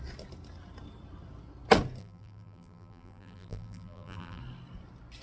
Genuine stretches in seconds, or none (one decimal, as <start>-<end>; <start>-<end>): 0.0-2.0; 4.4-5.2